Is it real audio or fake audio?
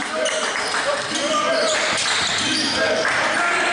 real